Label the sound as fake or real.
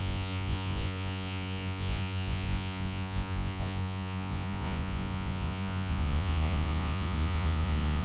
fake